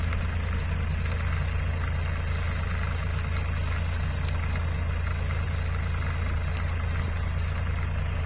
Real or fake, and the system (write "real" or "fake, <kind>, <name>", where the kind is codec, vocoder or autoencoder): real